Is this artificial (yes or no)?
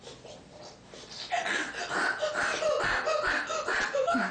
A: no